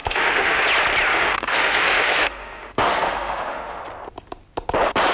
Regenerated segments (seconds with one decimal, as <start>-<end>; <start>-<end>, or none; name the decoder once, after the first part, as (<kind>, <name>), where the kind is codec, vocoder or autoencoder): 0.0-0.6 (autoencoder, DAC-VAE); 1.1-3.8